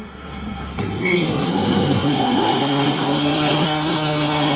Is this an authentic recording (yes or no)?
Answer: no